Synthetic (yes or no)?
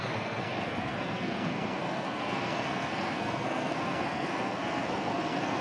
yes